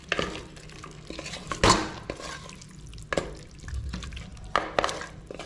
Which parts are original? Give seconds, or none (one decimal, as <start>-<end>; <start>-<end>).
0.0-5.5